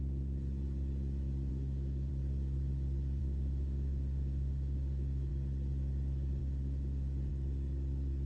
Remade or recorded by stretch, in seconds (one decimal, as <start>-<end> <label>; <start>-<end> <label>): 0.0-1.5 recorded; 1.5-2.1 remade; 2.1-3.2 recorded; 3.2-5.3 remade; 5.3-6.4 recorded; 6.4-7.3 remade; 7.3-8.3 recorded